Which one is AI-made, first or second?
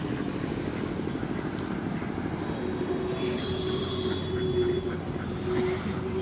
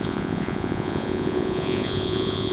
second